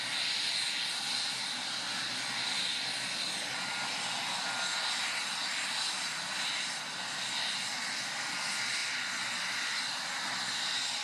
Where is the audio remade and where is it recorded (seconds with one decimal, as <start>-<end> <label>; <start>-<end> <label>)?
0.0-11.0 recorded